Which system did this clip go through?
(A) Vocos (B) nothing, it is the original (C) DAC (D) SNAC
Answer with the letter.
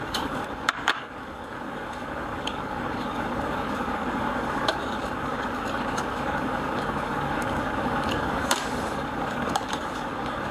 C